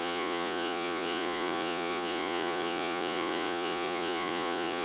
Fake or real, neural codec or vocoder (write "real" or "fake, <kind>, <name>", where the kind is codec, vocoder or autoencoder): fake, vocoder, Vocos